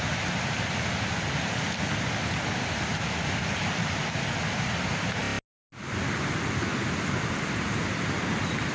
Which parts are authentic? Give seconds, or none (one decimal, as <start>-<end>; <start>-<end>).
0.0-8.7